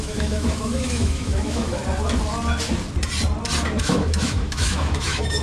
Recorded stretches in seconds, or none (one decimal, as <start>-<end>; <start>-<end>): 1.8-3.8